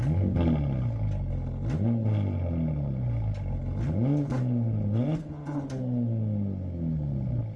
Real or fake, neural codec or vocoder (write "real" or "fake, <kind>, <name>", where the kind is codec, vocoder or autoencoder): real